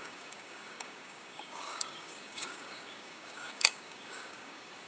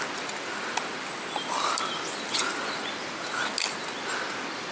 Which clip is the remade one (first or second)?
first